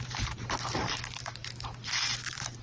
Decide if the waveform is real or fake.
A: fake